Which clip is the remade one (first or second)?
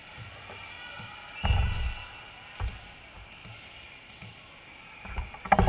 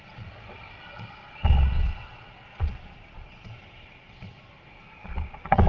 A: second